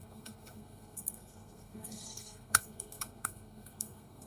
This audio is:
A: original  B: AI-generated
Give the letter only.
B